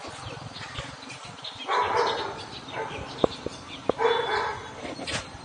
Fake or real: real